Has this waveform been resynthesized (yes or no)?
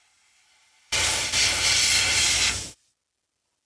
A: no